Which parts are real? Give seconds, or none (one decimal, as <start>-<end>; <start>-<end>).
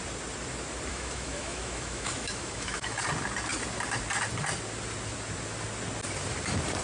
0.0-0.9; 3.0-6.8